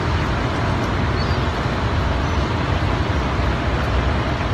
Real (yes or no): yes